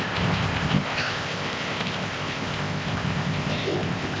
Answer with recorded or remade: remade